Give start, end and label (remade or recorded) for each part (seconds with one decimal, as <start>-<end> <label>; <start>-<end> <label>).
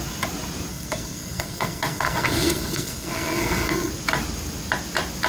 0.0-0.7 recorded; 0.7-3.9 remade; 3.9-5.3 recorded